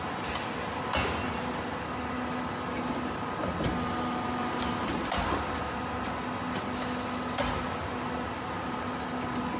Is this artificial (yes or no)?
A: no